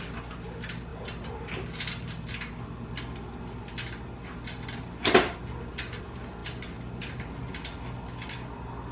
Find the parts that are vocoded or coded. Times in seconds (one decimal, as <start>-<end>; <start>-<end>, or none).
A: none